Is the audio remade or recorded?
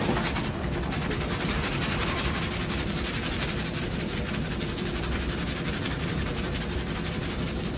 recorded